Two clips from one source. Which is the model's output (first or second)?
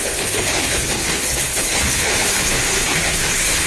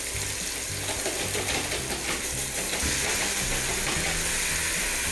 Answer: first